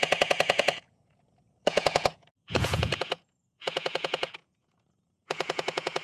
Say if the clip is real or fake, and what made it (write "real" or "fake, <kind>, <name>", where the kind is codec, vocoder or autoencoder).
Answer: fake, vocoder, Vocos